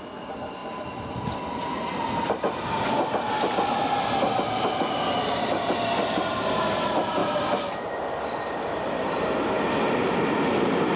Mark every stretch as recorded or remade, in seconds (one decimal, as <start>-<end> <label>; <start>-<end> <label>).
0.0-11.0 recorded